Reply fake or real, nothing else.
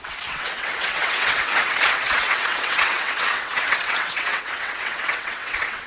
fake